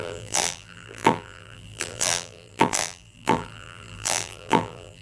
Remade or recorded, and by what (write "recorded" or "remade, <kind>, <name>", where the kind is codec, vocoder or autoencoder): remade, vocoder, BigVGAN v2